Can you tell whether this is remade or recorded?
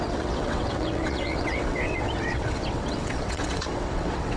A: remade